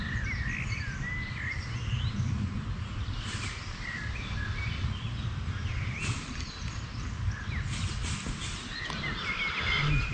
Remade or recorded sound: recorded